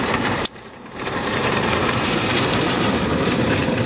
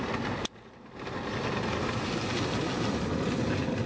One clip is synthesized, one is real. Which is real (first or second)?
second